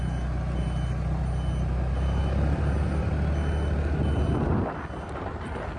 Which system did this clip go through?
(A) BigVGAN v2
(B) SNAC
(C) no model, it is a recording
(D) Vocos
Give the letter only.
C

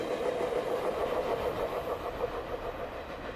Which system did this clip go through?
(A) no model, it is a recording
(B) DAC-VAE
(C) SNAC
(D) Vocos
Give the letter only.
A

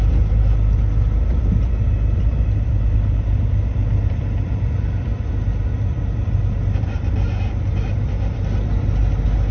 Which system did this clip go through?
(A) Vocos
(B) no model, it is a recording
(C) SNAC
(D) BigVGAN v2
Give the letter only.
D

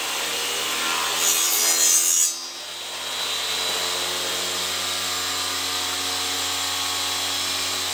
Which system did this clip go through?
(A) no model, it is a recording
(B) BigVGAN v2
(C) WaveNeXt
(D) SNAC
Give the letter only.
A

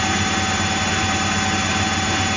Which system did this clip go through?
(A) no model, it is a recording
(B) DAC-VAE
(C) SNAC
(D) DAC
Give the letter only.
A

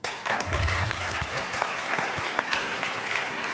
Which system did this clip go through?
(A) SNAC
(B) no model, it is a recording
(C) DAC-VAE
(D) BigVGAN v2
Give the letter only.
A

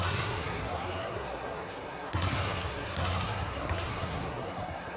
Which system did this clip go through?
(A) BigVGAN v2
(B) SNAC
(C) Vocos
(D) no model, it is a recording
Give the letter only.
B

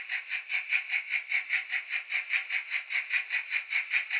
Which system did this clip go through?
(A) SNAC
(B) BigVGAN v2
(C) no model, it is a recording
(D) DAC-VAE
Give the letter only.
C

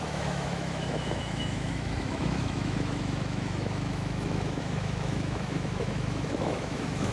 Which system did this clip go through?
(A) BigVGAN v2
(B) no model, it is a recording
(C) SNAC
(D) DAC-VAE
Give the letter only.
D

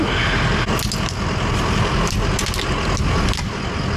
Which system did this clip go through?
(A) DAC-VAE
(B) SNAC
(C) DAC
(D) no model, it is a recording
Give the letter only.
D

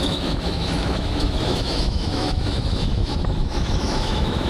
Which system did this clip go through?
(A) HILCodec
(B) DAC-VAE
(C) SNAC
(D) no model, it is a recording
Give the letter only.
B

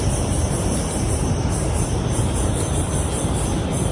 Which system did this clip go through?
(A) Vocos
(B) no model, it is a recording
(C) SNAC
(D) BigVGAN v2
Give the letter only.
B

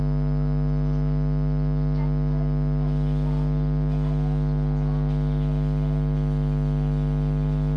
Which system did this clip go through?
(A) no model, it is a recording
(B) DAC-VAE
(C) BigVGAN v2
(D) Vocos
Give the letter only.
A